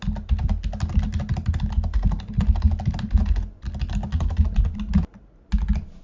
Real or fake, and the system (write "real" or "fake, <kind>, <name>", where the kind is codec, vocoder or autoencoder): real